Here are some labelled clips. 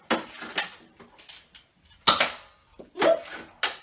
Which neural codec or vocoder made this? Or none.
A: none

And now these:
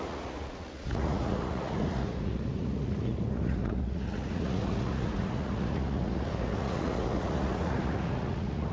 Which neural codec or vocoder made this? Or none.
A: vocoder, Vocos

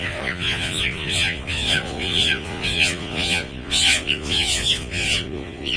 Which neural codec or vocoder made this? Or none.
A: vocoder, Vocos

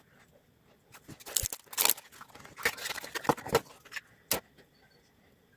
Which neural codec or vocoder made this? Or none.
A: none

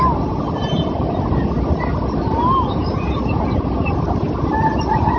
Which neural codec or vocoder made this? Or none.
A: none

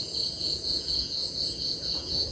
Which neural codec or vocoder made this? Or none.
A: vocoder, Vocos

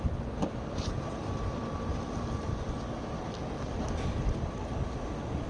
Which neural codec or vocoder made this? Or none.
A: none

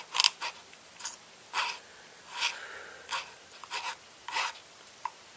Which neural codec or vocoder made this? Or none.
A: none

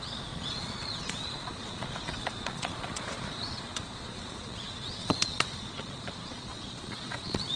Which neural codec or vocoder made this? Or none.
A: vocoder, Vocos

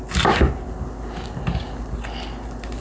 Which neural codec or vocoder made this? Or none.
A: none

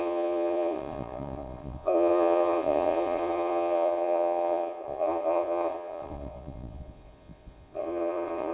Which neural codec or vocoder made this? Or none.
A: vocoder, Vocos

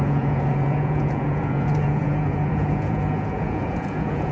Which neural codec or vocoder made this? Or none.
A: vocoder, Vocos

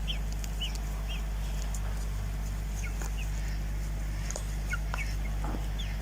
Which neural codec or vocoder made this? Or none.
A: none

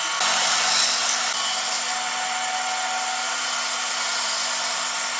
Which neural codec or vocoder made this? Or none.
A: none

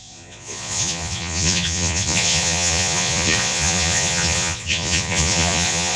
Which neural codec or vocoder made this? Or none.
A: vocoder, Vocos